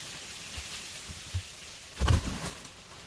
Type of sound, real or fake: real